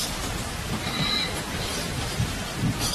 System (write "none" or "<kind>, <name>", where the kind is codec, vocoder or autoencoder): vocoder, BigVGAN v2